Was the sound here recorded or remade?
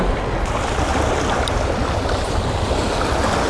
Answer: recorded